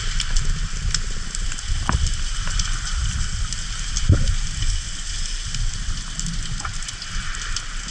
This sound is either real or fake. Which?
real